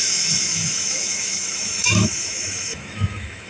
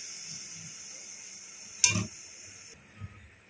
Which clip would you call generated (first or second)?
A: first